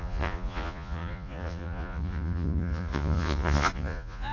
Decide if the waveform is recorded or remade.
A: remade